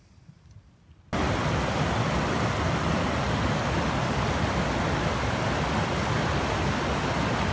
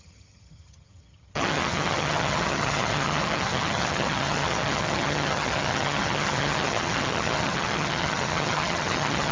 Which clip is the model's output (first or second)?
second